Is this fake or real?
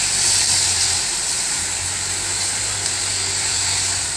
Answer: real